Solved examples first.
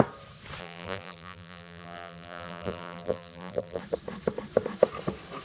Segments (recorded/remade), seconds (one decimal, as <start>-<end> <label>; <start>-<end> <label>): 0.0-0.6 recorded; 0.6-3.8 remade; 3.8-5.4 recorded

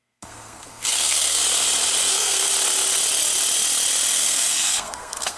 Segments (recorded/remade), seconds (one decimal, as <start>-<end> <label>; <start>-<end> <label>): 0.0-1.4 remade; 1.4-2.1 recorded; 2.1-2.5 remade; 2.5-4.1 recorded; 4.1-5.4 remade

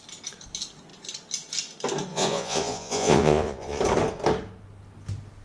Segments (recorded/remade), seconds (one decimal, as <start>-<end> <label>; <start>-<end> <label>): 0.0-2.1 recorded; 2.1-3.8 remade; 3.8-5.4 recorded